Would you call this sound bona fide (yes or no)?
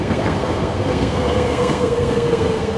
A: no